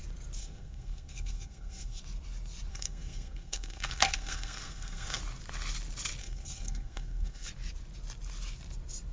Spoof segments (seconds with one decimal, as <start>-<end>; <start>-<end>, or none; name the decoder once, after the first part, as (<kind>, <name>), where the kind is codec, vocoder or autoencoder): 0.4-2.0 (codec, SNAC); 2.7-5.2; 6.2-7.5